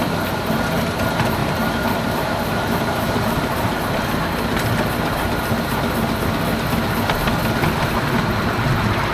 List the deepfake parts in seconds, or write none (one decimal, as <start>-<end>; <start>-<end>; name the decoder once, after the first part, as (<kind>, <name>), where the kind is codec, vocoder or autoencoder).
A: 1.4-3.8 (vocoder, BigVGAN v2)